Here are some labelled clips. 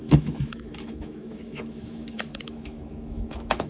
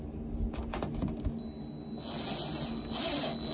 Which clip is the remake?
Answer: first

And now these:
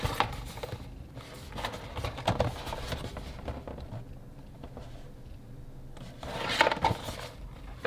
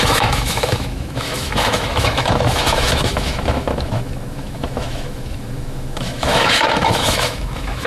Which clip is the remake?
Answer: second